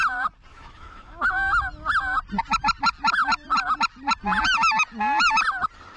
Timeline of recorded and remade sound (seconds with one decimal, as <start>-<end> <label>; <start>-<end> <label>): 0.0-0.5 recorded; 0.5-1.3 remade; 1.3-6.0 recorded